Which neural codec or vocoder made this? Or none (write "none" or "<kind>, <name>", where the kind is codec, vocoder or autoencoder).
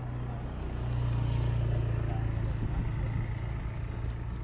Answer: none